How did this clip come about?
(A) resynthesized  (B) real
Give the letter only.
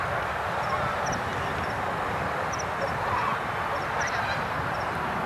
B